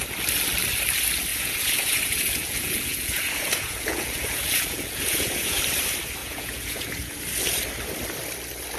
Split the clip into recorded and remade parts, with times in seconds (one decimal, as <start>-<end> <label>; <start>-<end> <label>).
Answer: 0.0-1.3 recorded; 1.3-5.6 remade; 5.6-6.2 recorded; 6.2-7.2 remade; 7.2-8.8 recorded